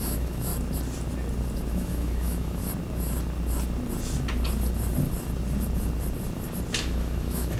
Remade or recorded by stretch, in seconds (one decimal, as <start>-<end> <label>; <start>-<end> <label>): 0.0-0.5 remade; 0.5-1.7 recorded; 1.7-2.6 remade; 2.6-6.8 recorded; 6.8-7.6 remade